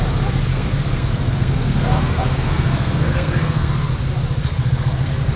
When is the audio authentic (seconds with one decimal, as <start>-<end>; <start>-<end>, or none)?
0.0-0.5; 3.7-4.4